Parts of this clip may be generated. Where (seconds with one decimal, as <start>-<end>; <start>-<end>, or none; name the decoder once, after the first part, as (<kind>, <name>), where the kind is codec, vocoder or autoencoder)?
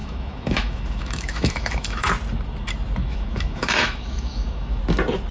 0.0-2.1 (autoencoder, DAC-VAE); 3.0-4.8